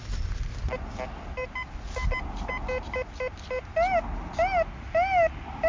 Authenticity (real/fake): real